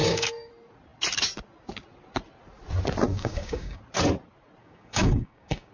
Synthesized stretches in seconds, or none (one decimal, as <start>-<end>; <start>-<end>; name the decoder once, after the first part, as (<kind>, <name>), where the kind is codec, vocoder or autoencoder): 0.0-0.5 (codec, DAC); 3.1-3.8; 4.6-5.7